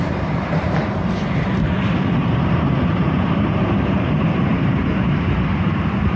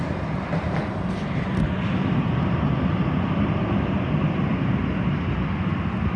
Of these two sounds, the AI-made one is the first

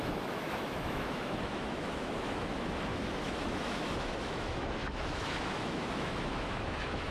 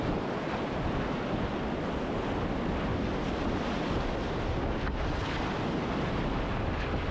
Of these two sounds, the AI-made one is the first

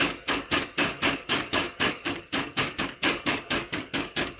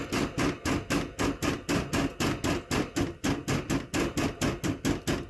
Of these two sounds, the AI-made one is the first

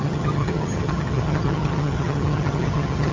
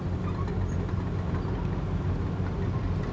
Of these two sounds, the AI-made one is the first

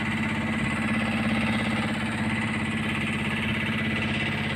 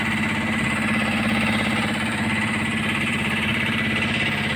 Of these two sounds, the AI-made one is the second